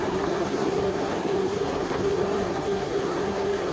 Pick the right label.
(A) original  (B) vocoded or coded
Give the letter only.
B